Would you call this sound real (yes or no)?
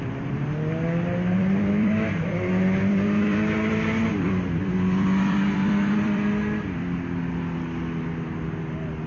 no